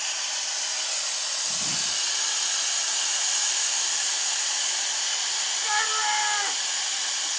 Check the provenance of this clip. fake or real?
real